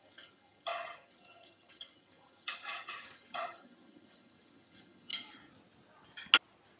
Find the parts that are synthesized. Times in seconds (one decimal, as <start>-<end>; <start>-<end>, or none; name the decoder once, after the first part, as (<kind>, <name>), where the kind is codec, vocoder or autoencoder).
0.0-5.1 (vocoder, HiFi-GAN)